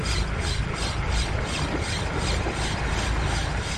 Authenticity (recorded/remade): recorded